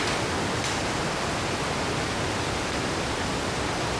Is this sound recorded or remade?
recorded